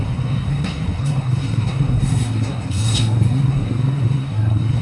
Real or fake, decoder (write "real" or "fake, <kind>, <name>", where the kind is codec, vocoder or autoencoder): fake, codec, SNAC